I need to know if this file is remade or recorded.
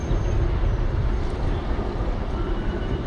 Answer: remade